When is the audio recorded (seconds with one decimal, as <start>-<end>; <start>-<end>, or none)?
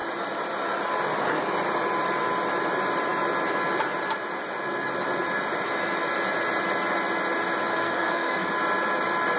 0.0-7.7; 8.5-9.4